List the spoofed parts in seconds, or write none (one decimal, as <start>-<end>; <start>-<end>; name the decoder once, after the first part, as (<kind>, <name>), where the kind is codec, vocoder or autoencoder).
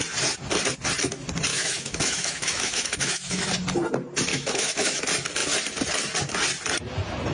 1.5-3.5 (autoencoder, DAC-VAE); 4.3-5.0